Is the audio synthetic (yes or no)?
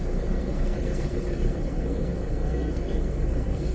yes